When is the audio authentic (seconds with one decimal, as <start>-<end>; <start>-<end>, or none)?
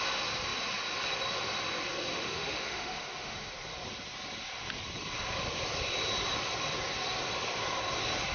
0.0-2.2; 3.5-8.3